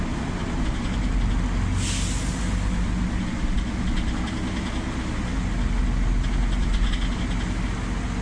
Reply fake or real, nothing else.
real